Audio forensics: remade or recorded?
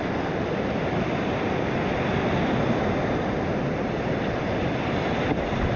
recorded